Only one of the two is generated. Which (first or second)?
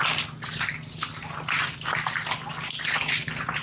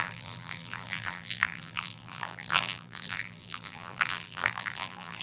second